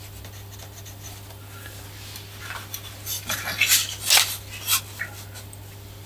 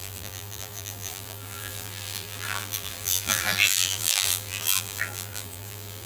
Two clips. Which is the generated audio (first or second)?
second